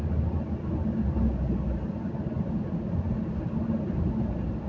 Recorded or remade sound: recorded